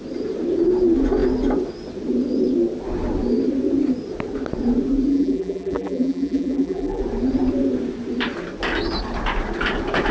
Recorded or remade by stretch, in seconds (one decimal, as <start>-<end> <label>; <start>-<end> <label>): 0.0-5.1 recorded; 5.1-7.0 remade; 7.0-10.1 recorded